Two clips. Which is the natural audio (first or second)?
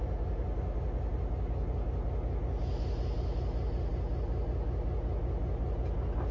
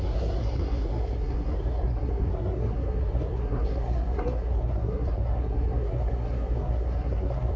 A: first